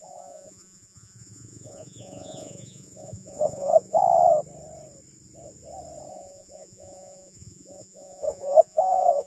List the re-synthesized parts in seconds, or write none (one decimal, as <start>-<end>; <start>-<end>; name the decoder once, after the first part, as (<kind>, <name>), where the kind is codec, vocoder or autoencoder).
0.0-4.0 (vocoder, Vocos); 6.1-9.3